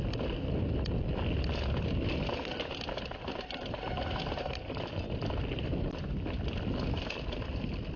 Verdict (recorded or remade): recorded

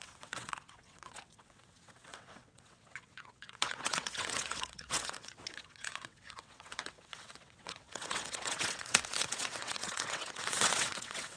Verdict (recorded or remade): remade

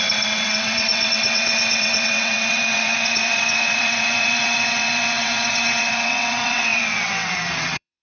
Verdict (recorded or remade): remade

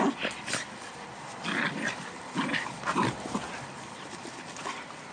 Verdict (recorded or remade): recorded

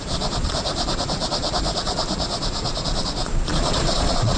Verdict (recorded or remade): remade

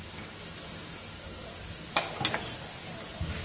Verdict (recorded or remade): recorded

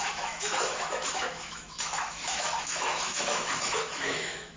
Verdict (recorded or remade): remade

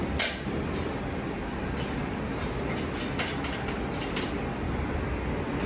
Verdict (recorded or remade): recorded